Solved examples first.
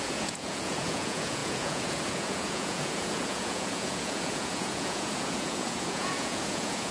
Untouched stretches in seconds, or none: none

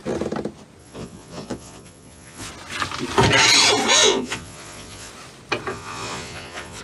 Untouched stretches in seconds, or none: 0.0-0.8; 2.5-3.9; 5.1-5.7

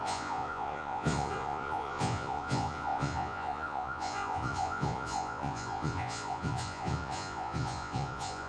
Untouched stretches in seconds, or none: none

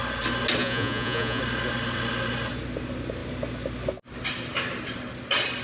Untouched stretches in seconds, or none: 0.0-0.6; 1.4-5.6